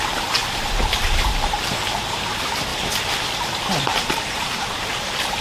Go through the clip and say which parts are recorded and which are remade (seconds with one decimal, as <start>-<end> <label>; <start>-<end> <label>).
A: 0.0-2.7 remade; 2.7-3.8 recorded; 3.8-5.4 remade